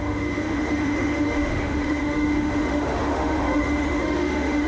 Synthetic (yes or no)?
yes